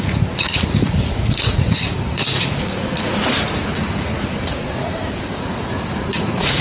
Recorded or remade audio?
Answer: remade